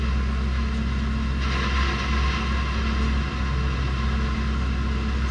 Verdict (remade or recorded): recorded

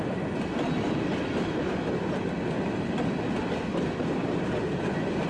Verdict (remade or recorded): recorded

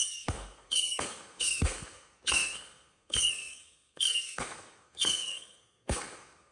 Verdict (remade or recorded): remade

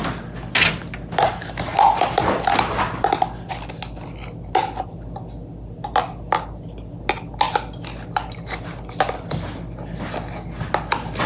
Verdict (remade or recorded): recorded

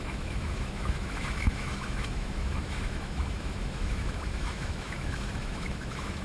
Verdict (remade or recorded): remade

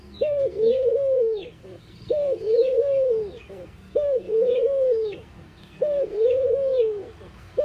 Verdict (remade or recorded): remade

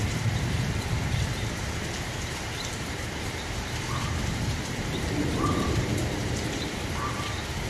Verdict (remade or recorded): remade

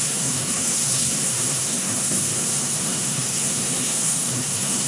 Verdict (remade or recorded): remade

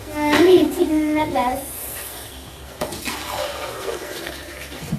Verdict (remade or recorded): remade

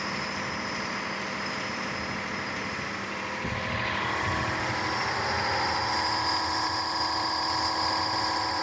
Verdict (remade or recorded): recorded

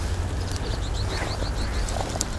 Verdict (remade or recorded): recorded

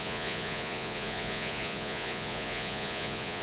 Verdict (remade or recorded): remade